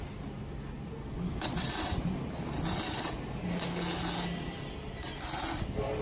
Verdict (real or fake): real